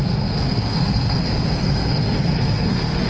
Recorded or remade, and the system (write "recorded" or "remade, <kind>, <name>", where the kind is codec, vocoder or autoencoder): remade, codec, SNAC